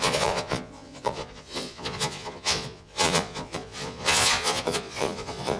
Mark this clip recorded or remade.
remade